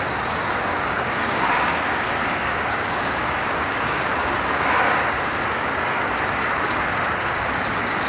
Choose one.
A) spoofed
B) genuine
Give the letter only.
A